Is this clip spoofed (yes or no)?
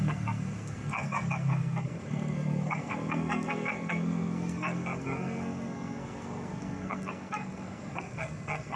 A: yes